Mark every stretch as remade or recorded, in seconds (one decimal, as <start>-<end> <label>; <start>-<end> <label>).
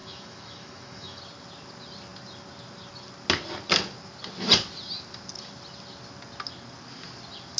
0.0-1.2 remade; 1.2-7.6 recorded